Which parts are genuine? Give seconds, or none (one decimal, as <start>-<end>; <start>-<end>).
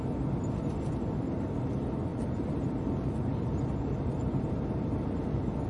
0.0-2.1